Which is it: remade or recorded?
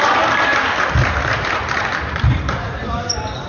remade